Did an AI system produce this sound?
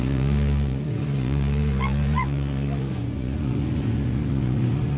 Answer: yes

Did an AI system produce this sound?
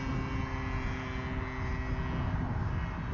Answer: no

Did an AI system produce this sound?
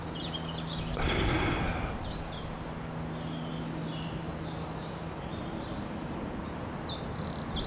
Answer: no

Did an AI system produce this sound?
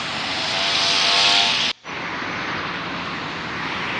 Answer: no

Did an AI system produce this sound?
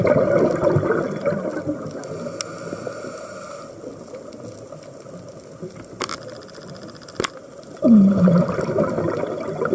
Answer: no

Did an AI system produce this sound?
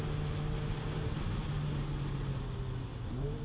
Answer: no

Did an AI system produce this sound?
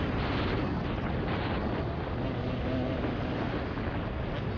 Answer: no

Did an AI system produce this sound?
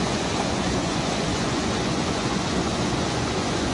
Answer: yes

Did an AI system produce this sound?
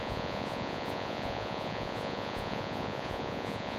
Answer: yes